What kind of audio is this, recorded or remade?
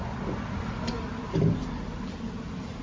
recorded